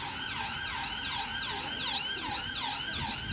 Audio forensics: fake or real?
real